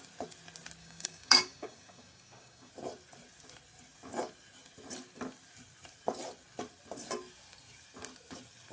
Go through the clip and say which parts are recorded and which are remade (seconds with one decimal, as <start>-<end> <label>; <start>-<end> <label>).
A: 0.0-0.8 recorded; 0.8-2.7 remade; 2.7-8.7 recorded